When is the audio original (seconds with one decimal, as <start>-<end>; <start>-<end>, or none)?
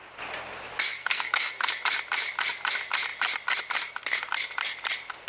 0.0-1.0; 1.7-5.3